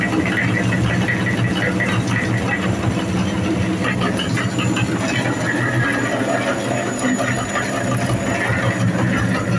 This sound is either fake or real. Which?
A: real